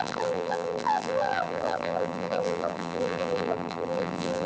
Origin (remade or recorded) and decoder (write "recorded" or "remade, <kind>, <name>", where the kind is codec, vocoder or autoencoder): remade, vocoder, BigVGAN v2